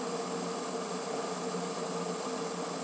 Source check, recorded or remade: recorded